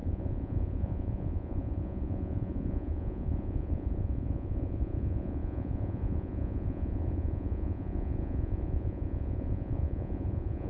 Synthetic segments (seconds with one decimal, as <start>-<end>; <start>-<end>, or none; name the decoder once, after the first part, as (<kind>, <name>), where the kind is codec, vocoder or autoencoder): 0.0-10.7 (vocoder, Vocos)